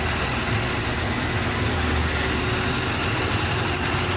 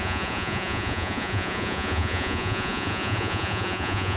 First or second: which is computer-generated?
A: second